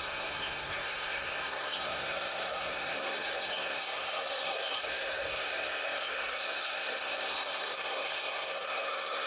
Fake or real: fake